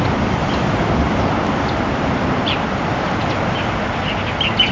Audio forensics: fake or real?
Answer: real